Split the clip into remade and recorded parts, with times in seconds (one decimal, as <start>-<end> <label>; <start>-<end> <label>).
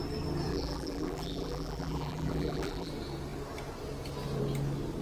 0.0-0.5 recorded; 0.5-2.9 remade; 2.9-5.0 recorded